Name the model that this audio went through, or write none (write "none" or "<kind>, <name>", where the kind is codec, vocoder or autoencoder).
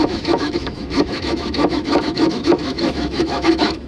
autoencoder, DAC-VAE